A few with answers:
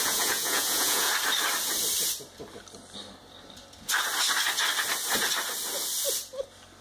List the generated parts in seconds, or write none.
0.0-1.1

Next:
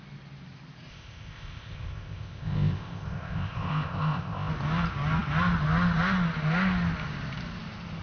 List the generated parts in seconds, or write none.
0.9-4.5

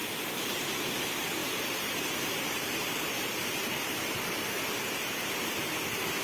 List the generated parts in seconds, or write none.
1.4-4.7